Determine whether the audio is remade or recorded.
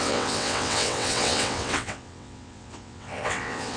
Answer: remade